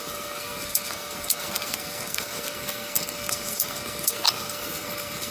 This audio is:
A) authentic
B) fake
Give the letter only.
B